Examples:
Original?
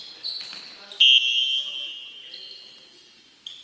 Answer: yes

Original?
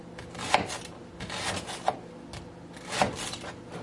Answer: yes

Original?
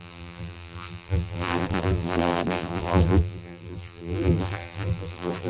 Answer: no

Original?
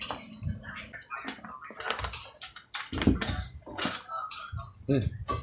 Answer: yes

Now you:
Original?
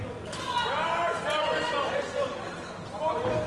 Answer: yes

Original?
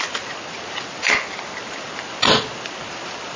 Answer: yes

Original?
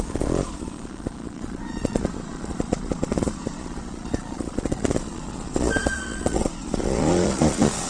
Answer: no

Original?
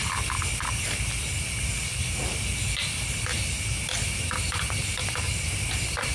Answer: yes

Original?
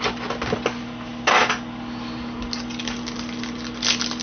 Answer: yes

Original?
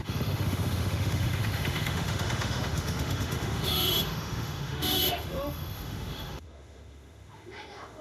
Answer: no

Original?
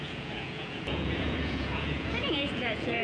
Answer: no